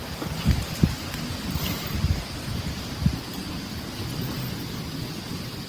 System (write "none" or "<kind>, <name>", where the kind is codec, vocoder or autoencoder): none